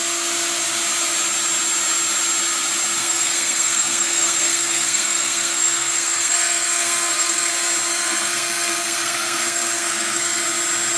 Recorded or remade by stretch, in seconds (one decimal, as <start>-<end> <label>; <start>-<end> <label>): 0.0-3.0 recorded; 3.0-7.5 remade; 7.5-7.9 recorded; 7.9-10.4 remade; 10.4-11.0 recorded